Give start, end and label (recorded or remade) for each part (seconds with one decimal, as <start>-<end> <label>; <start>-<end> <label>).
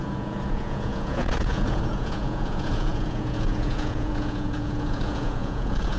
0.0-6.0 remade